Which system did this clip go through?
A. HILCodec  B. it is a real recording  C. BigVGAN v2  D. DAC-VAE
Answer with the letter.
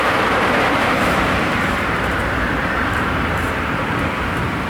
C